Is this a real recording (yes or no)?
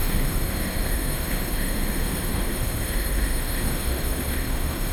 no